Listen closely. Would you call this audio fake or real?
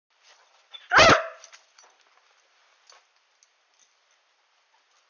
real